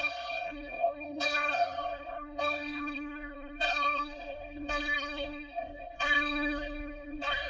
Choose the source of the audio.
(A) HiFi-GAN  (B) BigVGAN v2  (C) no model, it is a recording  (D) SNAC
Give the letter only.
D